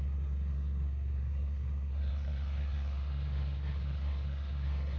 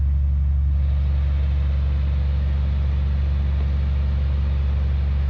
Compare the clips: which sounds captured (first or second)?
second